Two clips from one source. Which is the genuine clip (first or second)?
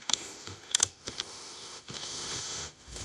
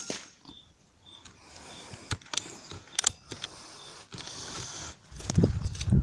second